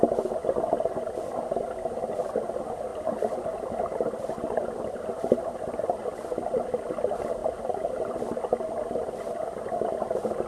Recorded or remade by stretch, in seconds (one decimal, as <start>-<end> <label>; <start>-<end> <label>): 0.0-2.9 recorded; 2.9-6.0 remade; 6.0-7.4 recorded; 7.4-8.2 remade; 8.2-10.5 recorded